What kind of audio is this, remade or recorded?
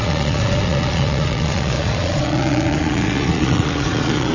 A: remade